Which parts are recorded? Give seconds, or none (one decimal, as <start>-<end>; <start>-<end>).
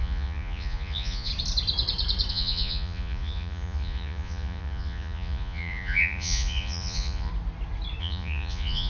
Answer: 1.3-2.3; 7.3-8.0